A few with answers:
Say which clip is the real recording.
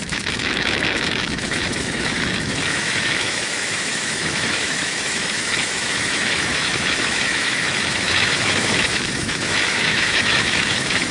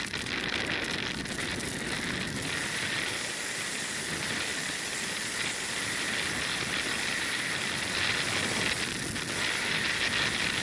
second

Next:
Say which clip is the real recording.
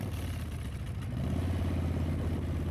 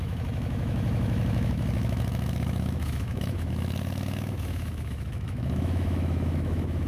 first